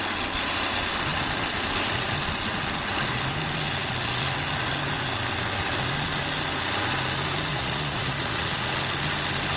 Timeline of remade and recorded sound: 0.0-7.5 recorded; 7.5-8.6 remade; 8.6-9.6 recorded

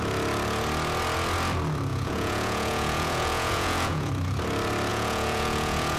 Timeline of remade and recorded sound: 0.0-1.9 recorded; 1.9-4.1 remade; 4.1-4.9 recorded; 4.9-6.0 remade

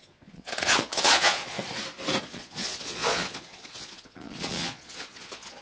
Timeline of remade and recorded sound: 0.0-1.6 remade; 1.6-2.2 recorded; 2.2-5.6 remade

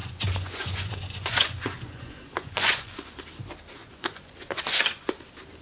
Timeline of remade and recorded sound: 0.0-3.2 remade; 3.2-3.8 recorded; 3.8-5.1 remade; 5.1-5.6 recorded

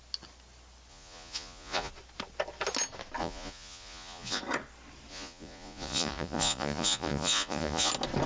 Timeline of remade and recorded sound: 0.0-0.9 recorded; 0.9-1.9 remade; 1.9-3.2 recorded; 3.2-4.4 remade; 4.4-5.1 recorded; 5.1-7.9 remade; 7.9-8.3 recorded

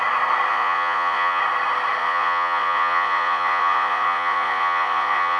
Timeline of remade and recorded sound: 0.0-0.5 recorded; 0.5-1.4 remade; 1.4-2.0 recorded; 2.0-5.4 remade

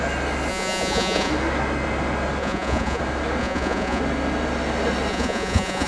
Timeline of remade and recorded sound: 0.0-0.5 recorded; 0.5-1.3 remade; 1.3-2.4 recorded; 2.4-3.0 remade; 3.0-3.4 recorded; 3.4-4.0 remade; 4.0-5.1 recorded; 5.1-5.9 remade

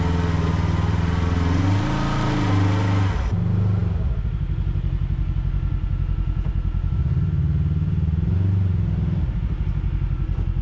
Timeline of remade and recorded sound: 0.0-10.6 recorded